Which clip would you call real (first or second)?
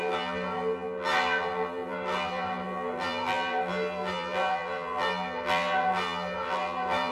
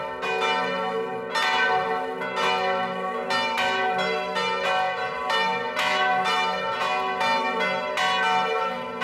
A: second